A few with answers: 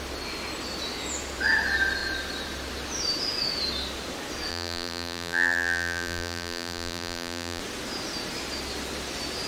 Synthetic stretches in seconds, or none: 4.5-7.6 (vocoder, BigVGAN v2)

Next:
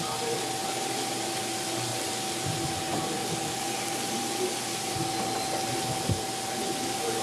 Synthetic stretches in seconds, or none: none

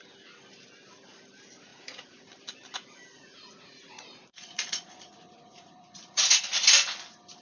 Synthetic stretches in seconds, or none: 1.7-2.3 (vocoder, Vocos); 3.1-6.4